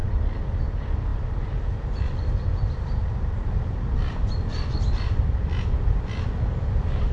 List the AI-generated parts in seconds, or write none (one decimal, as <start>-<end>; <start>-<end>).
1.1-5.4